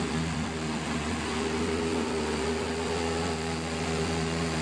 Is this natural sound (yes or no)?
no